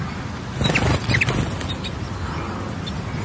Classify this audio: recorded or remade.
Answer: recorded